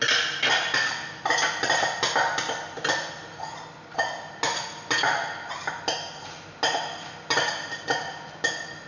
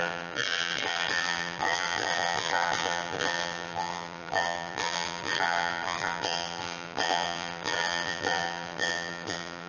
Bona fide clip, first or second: first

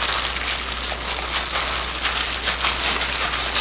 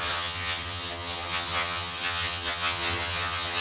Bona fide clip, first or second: first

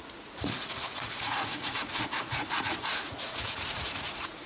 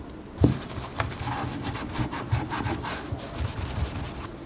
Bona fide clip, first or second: second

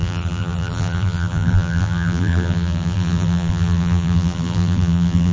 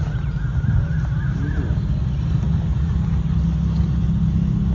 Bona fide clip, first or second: second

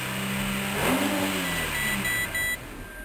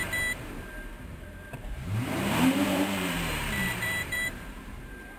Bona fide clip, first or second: first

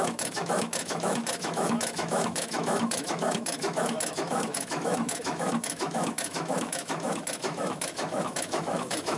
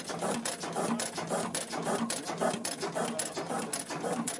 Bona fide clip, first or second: second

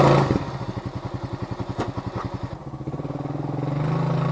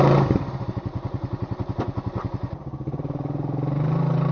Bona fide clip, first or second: first